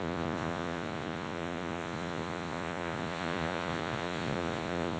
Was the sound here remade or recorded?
remade